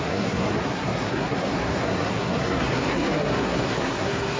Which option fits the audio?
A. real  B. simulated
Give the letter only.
B